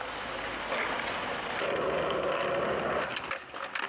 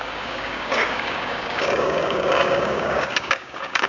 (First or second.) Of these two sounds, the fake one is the second